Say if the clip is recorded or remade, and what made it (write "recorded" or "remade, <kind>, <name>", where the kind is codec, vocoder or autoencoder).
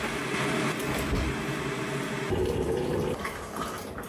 recorded